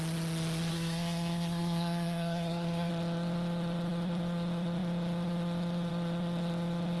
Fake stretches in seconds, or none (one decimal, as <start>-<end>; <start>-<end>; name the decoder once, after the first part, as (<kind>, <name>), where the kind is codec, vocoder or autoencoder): 0.7-2.9 (codec, SNAC)